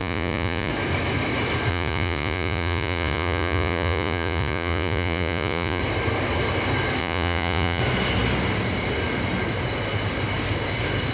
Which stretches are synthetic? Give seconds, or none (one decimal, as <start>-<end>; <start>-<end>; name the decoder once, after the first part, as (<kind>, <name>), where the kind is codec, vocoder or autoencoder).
0.0-0.7 (vocoder, Vocos); 1.7-5.8; 7.0-7.8